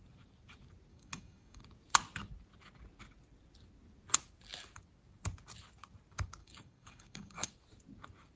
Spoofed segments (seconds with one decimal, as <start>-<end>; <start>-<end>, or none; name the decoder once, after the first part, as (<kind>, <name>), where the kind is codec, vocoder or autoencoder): 0.9-1.6 (codec, DAC); 6.4-7.5